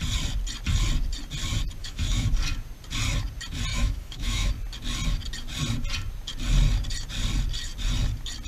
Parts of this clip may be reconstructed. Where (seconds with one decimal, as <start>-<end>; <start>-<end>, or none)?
1.8-2.3; 3.7-4.5